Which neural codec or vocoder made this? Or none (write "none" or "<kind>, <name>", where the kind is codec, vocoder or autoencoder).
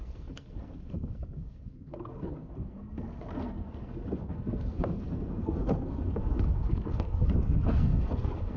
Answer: codec, SNAC